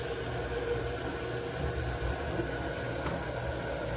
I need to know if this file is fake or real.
real